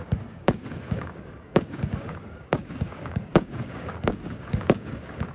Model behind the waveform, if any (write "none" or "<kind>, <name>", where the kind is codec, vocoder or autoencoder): codec, DAC